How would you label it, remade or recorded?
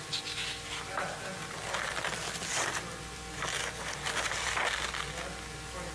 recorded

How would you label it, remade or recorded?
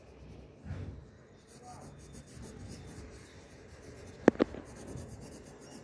recorded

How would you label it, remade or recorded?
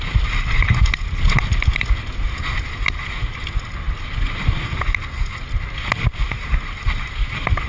recorded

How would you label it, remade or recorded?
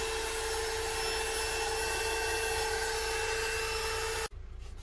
recorded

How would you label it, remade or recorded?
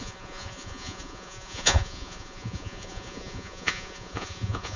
remade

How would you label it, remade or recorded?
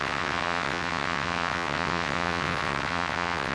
remade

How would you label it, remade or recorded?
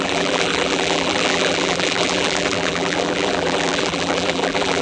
remade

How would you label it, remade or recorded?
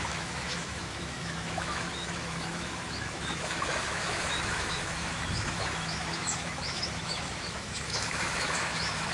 remade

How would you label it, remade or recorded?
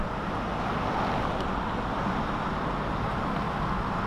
recorded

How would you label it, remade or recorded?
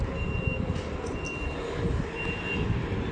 recorded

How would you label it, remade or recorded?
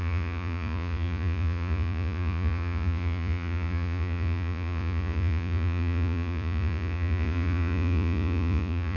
remade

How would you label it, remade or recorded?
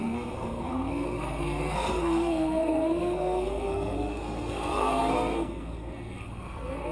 remade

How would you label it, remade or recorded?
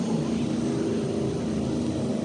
recorded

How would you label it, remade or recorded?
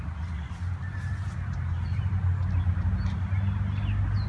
recorded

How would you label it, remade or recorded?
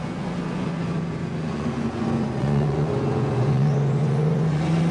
remade